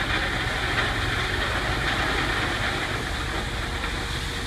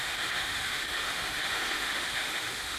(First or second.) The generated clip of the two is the second